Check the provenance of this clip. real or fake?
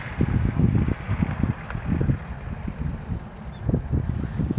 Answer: real